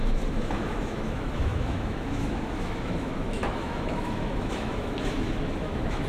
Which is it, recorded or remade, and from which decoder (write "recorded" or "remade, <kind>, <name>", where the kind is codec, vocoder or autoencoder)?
remade, autoencoder, DAC-VAE